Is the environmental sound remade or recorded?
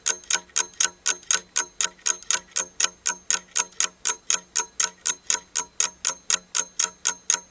recorded